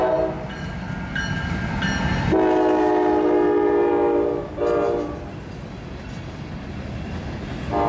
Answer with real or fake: real